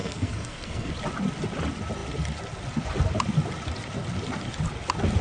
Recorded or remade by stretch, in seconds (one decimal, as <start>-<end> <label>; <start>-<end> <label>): 0.0-0.9 remade; 0.9-5.2 recorded